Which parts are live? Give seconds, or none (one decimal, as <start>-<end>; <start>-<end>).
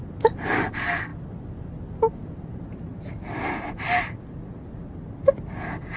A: 0.0-6.0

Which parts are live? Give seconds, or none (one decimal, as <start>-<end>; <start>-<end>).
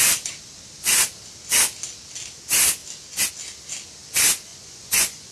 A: 0.0-4.5